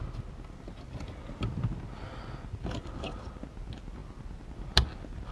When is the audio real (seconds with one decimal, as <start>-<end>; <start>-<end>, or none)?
0.0-5.3